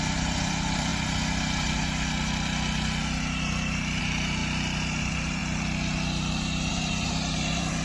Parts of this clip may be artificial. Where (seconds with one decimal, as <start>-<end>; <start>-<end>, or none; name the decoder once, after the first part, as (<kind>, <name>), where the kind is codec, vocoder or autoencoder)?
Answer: 0.0-0.9 (vocoder, BigVGAN v2); 4.0-4.4; 5.0-5.4; 6.7-7.8